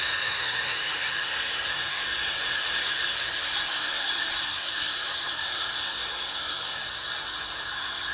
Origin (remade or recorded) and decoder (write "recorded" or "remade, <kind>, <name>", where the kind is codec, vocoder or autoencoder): remade, codec, SNAC